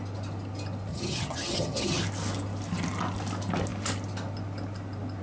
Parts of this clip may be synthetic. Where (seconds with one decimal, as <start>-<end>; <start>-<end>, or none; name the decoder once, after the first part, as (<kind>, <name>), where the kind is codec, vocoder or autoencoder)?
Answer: 0.9-2.0 (vocoder, HiFi-GAN)

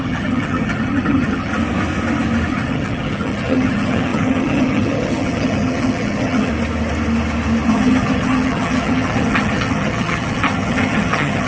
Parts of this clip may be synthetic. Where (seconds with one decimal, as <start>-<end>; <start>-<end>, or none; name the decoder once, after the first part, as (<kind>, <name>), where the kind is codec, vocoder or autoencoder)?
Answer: 0.0-1.5 (vocoder, HiFi-GAN); 2.5-6.5; 7.7-11.5

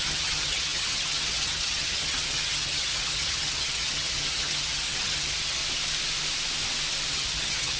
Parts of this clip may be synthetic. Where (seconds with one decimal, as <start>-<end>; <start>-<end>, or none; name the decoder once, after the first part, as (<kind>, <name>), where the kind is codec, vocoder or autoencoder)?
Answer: 0.0-5.6 (vocoder, HiFi-GAN); 7.1-7.8

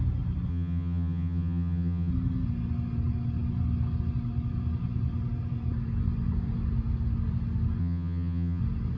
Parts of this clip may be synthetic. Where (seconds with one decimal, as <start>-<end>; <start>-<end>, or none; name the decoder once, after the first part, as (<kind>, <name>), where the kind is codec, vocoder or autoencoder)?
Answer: 0.5-2.1 (vocoder, HiFi-GAN); 7.8-8.6

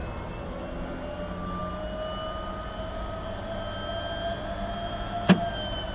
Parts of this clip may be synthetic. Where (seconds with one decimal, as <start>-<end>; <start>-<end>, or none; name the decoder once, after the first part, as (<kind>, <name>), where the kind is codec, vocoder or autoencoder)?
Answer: none

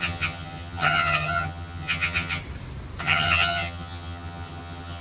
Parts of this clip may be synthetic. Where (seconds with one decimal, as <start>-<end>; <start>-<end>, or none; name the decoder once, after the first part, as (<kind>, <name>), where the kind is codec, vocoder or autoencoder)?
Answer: 0.0-2.4 (vocoder, HiFi-GAN); 3.0-5.0

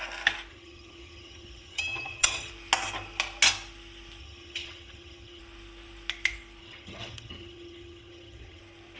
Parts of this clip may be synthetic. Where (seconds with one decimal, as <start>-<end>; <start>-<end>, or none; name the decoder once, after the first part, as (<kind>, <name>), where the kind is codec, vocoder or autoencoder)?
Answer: 0.5-2.5 (vocoder, HiFi-GAN); 4.2-5.4; 6.6-8.6